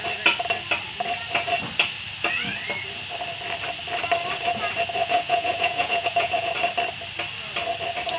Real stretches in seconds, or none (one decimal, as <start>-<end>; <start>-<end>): 0.0-5.0; 6.5-8.2